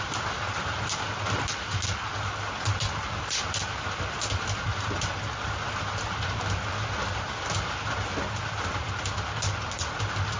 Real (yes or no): yes